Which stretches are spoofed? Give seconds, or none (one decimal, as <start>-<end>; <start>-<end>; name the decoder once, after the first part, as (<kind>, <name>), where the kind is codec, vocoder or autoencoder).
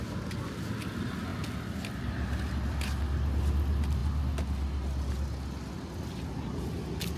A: none